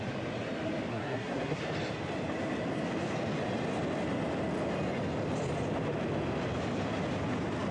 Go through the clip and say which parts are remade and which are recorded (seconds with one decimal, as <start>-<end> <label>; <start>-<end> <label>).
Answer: 0.0-0.9 recorded; 0.9-1.6 remade; 1.6-7.7 recorded